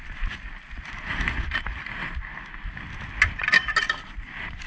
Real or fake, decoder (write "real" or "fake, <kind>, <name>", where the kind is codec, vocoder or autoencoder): real